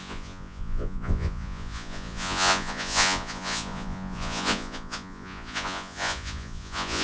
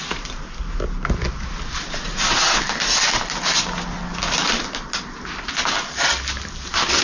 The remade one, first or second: first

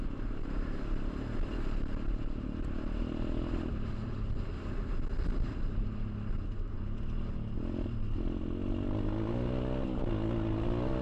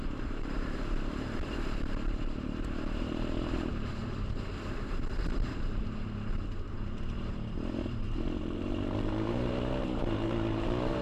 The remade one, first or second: second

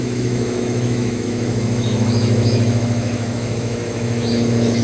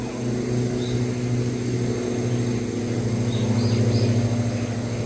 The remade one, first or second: first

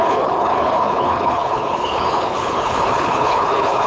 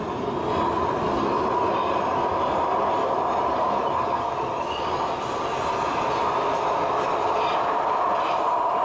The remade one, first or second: first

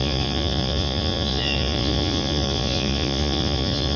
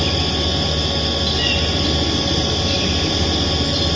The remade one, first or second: first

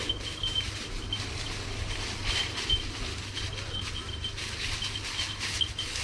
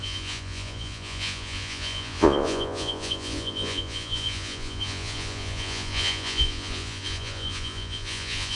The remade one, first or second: second